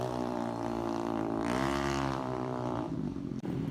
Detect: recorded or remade remade